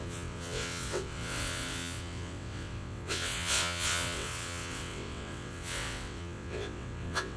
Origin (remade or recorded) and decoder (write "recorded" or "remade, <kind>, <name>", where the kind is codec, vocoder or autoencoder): remade, vocoder, WaveNeXt